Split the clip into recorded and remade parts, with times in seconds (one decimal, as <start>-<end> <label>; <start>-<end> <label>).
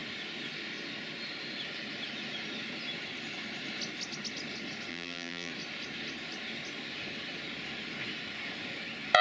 0.0-4.9 recorded; 4.9-5.5 remade; 5.5-9.2 recorded